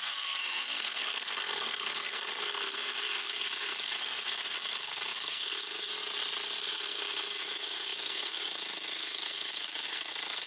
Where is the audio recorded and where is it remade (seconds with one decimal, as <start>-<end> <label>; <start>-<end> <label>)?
0.0-5.9 remade; 5.9-6.6 recorded; 6.6-10.5 remade